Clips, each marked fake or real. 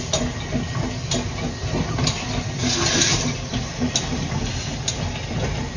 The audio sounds real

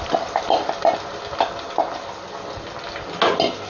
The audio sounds real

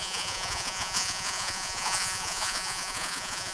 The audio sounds fake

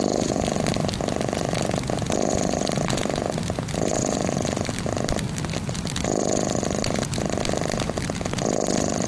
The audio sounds real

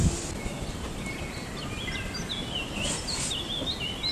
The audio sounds real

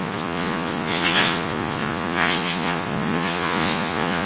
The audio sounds fake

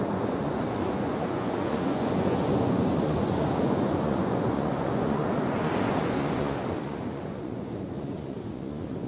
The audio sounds fake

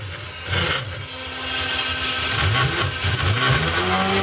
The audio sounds real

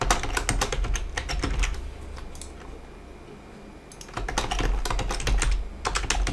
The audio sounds real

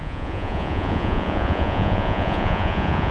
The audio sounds fake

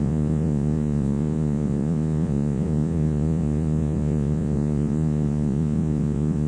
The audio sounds fake